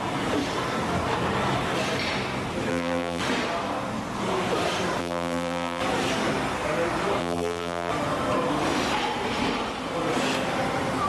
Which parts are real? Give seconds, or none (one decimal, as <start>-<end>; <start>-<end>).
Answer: 0.0-2.7; 3.2-5.0; 5.8-7.2; 7.9-11.1